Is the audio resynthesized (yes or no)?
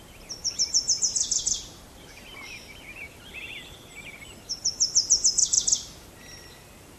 yes